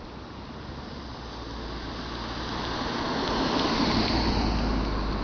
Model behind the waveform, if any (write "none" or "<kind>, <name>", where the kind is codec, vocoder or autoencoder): none